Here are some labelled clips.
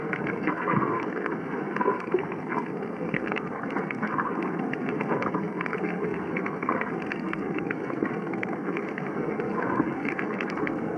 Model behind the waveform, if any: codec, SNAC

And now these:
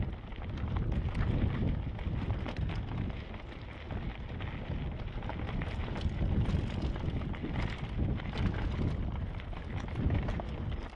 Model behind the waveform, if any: none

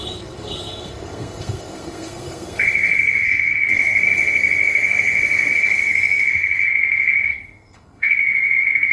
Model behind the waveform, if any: codec, SNAC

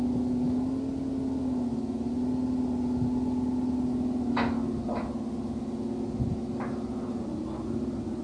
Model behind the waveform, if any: none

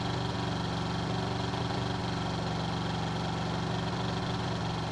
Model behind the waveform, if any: none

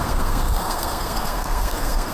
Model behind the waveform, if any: codec, SNAC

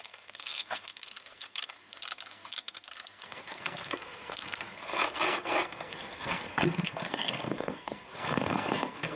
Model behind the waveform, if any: codec, SNAC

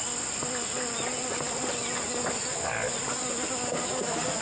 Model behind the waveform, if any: none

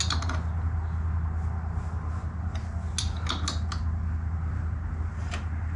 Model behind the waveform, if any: none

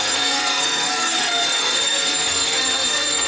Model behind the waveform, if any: codec, SNAC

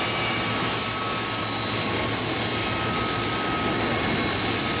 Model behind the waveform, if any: none